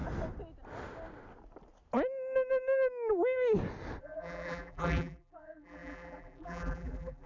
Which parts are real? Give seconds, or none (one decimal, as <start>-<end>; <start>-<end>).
0.0-4.0